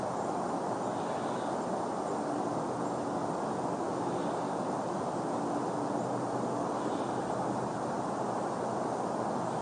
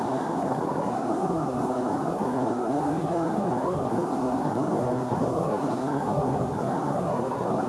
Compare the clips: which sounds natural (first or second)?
first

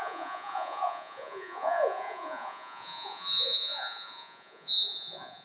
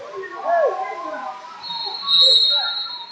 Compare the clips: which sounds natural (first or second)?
second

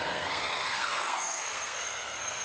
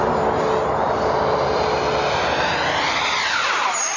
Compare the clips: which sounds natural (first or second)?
second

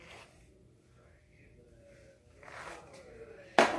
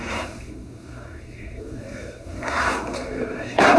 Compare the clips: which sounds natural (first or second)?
first